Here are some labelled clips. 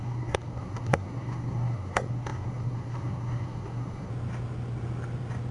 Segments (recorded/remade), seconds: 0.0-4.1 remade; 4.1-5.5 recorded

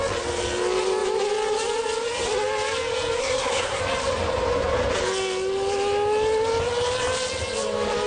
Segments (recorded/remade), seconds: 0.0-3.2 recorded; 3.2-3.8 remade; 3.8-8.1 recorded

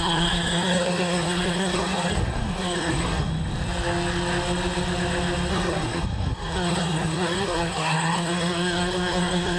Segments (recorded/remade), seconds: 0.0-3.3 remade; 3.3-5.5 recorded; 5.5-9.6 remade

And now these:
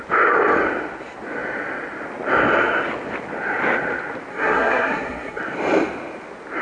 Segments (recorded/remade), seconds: 0.0-4.3 recorded; 4.3-5.4 remade; 5.4-6.6 recorded